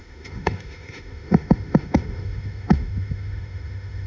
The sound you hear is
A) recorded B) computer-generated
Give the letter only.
B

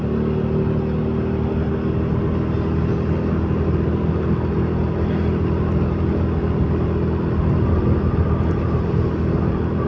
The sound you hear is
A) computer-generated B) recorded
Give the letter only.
B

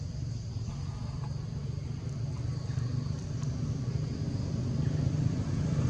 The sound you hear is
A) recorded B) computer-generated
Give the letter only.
A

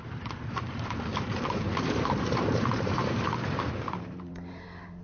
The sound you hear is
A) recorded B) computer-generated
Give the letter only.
B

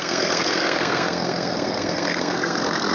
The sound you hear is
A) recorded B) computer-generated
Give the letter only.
B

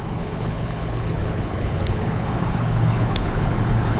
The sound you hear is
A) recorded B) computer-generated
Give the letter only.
B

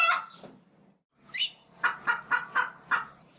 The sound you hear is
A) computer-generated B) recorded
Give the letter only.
B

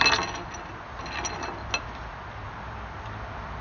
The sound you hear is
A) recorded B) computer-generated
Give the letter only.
A